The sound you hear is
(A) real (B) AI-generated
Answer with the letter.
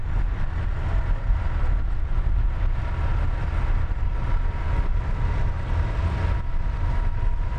A